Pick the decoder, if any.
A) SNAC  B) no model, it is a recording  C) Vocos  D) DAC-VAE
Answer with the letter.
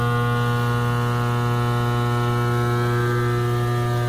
B